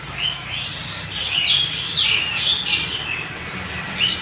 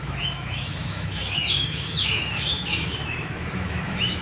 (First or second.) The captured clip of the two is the first